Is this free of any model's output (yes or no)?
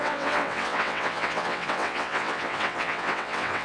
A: no